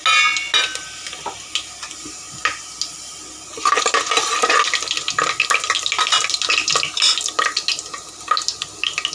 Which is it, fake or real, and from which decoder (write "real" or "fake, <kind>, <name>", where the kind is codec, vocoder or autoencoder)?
real